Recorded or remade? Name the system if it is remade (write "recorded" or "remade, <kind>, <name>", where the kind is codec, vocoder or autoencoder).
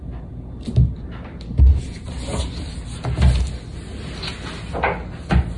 recorded